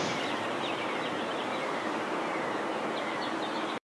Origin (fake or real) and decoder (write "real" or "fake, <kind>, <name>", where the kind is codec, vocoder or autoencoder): fake, vocoder, BigVGAN v2